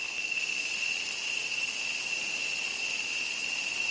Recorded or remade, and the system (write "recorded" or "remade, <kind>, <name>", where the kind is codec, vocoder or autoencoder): recorded